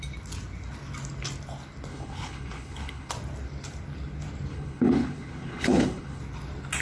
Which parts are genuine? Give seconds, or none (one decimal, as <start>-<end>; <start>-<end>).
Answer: 0.0-1.9; 3.1-4.5; 6.2-6.8